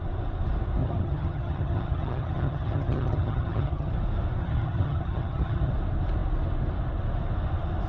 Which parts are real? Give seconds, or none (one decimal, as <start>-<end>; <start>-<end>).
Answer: 0.0-0.8; 3.9-4.4; 5.7-7.9